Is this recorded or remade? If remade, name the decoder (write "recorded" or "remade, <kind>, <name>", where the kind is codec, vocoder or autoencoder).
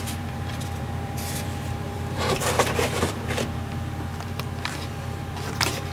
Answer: remade, vocoder, BigVGAN v2